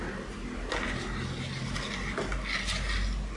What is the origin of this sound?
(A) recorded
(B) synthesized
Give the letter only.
A